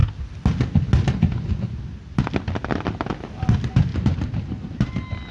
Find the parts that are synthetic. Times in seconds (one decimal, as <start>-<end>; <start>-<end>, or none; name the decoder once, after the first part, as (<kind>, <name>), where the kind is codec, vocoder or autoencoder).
3.9-4.7 (vocoder, BigVGAN v2)